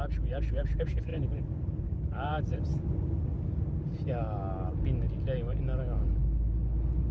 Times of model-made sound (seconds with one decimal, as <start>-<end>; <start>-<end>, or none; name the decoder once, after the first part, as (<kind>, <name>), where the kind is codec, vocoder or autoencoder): 0.0-2.7 (vocoder, BigVGAN v2)